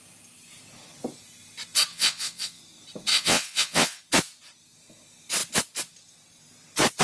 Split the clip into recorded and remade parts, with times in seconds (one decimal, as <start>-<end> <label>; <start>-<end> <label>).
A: 0.0-1.9 recorded; 1.9-2.6 remade; 2.6-3.1 recorded; 3.1-4.0 remade; 4.0-7.0 recorded